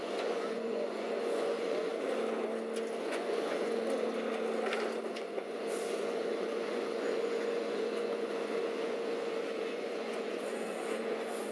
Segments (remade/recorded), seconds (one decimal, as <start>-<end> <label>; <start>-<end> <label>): 0.0-1.9 remade; 1.9-3.0 recorded; 3.0-3.8 remade; 3.8-5.1 recorded; 5.1-11.5 remade